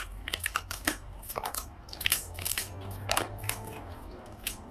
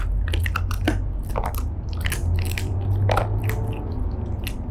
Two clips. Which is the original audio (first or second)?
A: second